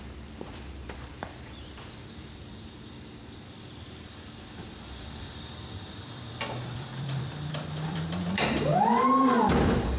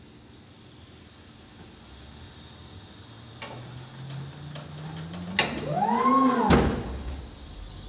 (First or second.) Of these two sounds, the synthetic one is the first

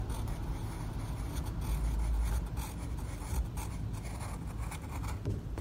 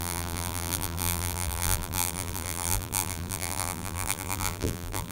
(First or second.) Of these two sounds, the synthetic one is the second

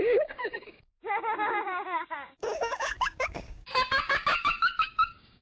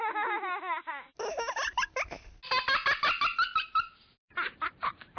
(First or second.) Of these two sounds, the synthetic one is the first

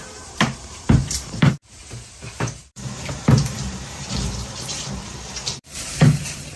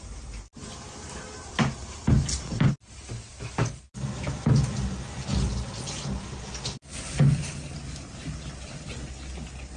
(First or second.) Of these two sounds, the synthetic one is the first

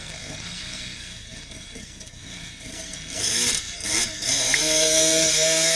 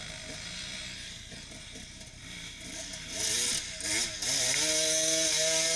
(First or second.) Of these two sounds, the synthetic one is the first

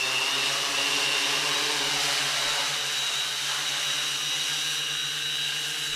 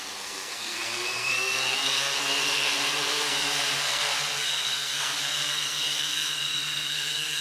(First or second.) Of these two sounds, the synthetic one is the second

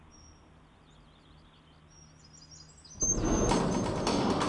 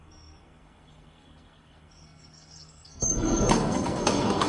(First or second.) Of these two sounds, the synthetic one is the second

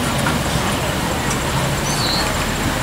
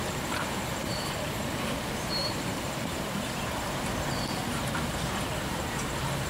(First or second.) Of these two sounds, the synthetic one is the second